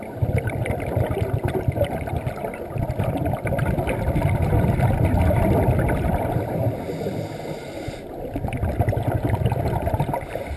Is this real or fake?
real